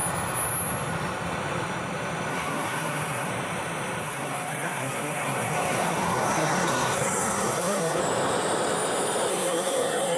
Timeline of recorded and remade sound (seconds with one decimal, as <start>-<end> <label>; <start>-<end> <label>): 0.0-2.3 recorded; 2.3-3.3 remade; 3.3-4.0 recorded; 4.0-8.0 remade; 8.0-9.3 recorded; 9.3-10.2 remade